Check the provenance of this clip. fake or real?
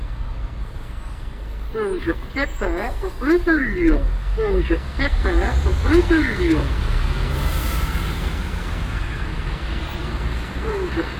fake